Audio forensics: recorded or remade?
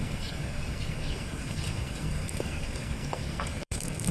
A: remade